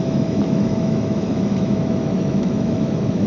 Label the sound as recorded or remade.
remade